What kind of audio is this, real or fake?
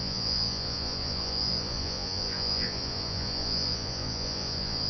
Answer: fake